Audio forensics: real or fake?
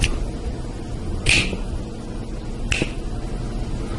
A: real